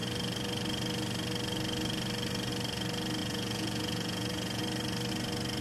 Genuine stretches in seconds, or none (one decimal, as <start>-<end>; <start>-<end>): 0.0-3.2; 4.6-5.6